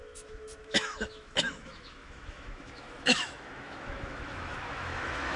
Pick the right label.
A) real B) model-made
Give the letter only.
B